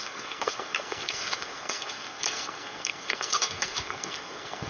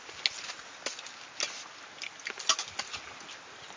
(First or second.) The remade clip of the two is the first